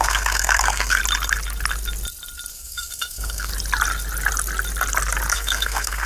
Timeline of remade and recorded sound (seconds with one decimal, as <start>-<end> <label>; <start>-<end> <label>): 0.0-1.0 remade; 1.0-2.5 recorded; 2.5-3.5 remade; 3.5-5.3 recorded; 5.3-6.1 remade